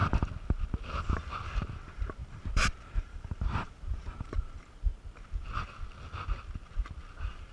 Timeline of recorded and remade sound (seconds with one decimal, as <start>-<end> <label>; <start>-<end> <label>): 0.0-1.8 recorded; 1.8-4.9 remade; 4.9-7.1 recorded; 7.1-7.5 remade